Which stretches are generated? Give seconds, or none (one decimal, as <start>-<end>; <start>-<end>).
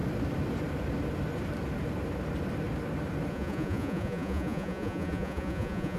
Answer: 3.3-6.0